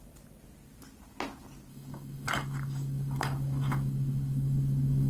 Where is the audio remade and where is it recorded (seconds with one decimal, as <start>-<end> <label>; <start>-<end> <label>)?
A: 0.0-1.7 recorded; 1.7-5.1 remade